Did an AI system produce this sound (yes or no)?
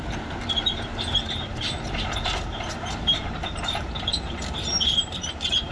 yes